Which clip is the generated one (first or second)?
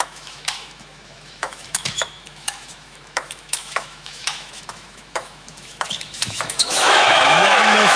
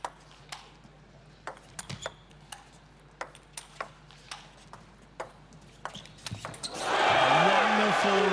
first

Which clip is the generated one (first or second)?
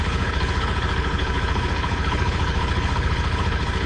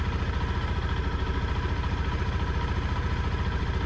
first